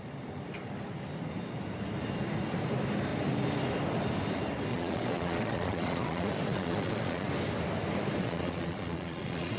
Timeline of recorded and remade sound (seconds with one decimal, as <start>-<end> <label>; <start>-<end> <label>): 0.0-4.7 recorded; 4.7-7.3 remade; 7.3-8.2 recorded; 8.2-9.6 remade